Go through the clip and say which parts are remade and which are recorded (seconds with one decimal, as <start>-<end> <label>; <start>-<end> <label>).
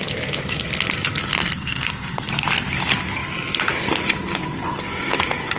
0.0-1.4 recorded; 1.4-2.3 remade; 2.3-5.6 recorded